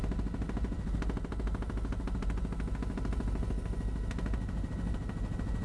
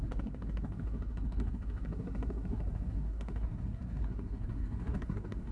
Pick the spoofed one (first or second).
second